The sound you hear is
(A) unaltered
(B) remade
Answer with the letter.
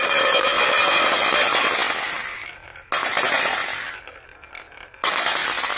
A